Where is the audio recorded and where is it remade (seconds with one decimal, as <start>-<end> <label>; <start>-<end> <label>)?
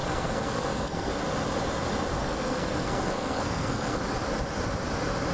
0.0-1.1 remade; 1.1-2.2 recorded; 2.2-4.0 remade; 4.0-5.3 recorded